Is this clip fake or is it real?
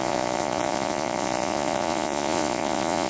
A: fake